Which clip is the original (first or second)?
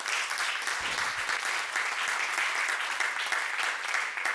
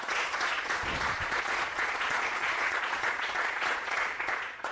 first